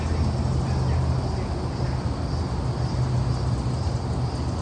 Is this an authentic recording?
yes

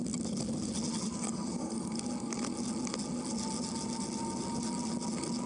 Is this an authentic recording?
yes